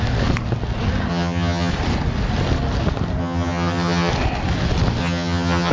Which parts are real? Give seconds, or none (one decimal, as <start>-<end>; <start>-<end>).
0.0-1.1; 1.7-3.2; 4.1-5.0

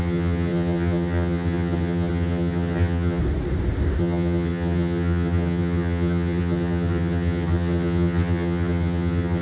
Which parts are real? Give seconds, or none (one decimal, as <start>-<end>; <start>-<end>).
3.2-4.0

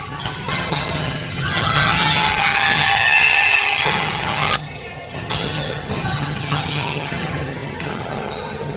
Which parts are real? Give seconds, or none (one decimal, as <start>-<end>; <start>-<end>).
none

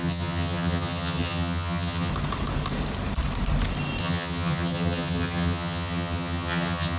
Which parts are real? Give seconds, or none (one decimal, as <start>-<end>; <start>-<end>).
2.1-4.0